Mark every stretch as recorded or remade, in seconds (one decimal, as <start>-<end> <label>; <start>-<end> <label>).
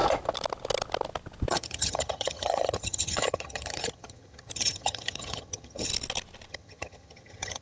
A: 0.0-1.5 recorded; 1.5-5.9 remade; 5.9-6.5 recorded; 6.5-7.6 remade